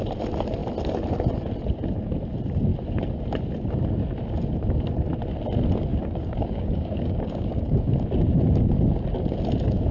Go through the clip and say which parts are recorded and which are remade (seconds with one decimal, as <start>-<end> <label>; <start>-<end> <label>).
0.0-5.9 recorded; 5.9-7.9 remade; 7.9-9.9 recorded